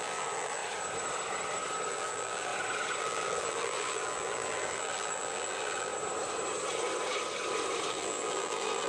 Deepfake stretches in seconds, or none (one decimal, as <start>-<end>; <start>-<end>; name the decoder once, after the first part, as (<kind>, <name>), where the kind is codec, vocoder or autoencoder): 0.0-0.6 (vocoder, BigVGAN v2); 1.9-2.5; 3.0-5.9; 7.9-8.9